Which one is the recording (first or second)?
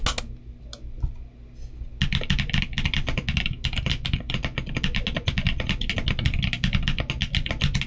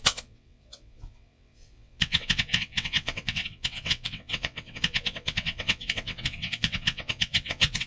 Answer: first